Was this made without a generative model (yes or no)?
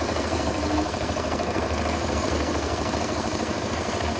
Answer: no